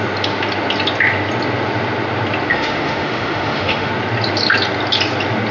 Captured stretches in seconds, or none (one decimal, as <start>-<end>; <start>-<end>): 0.0-2.5; 3.9-5.5